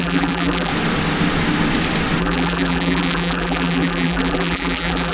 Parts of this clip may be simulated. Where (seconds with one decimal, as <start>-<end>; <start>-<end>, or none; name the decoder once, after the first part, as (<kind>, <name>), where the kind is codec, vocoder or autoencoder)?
0.0-0.7 (vocoder, BigVGAN v2); 2.2-5.1